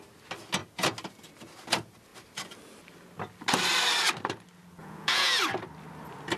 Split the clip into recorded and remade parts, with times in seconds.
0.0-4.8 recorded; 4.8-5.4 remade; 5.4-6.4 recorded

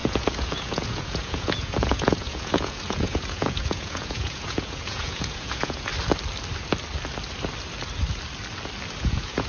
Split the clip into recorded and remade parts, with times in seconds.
0.0-5.9 remade; 5.9-9.0 recorded; 9.0-9.5 remade